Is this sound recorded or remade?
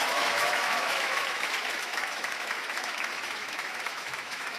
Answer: remade